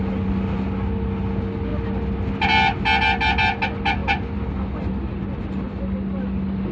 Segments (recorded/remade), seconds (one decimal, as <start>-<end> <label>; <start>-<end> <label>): 0.0-6.7 recorded